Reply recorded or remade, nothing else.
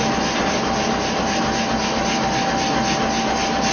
recorded